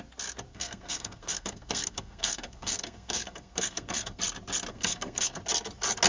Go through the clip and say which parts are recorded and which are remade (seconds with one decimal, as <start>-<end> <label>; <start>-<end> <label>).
0.0-0.5 recorded; 0.5-4.2 remade; 4.2-4.7 recorded; 4.7-5.4 remade; 5.4-6.1 recorded